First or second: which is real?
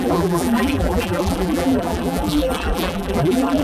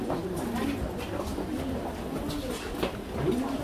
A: second